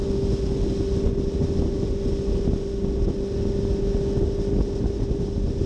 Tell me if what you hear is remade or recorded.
recorded